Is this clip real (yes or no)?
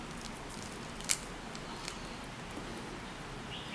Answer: yes